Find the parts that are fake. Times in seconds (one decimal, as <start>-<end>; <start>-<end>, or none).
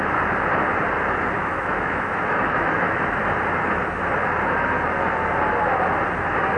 1.4-3.2